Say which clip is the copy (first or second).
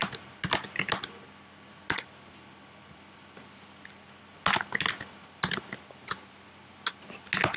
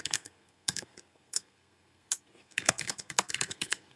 second